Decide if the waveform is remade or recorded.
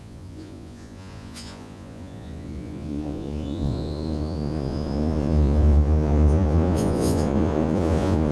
remade